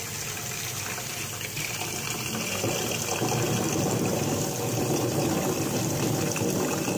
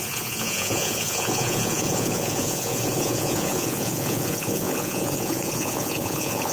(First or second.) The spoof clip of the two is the second